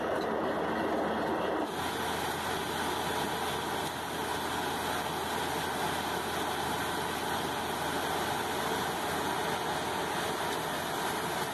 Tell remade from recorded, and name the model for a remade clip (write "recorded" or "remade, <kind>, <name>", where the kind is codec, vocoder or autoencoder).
recorded